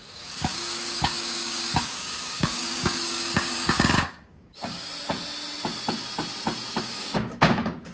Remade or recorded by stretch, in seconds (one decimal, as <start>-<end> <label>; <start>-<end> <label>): 0.0-4.9 remade; 4.9-6.8 recorded; 6.8-7.9 remade